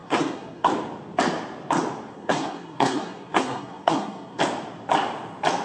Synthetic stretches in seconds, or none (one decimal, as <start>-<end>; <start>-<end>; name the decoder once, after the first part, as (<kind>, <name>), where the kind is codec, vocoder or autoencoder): 0.0-0.7 (codec, SNAC); 2.1-4.4